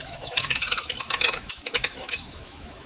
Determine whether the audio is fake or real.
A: fake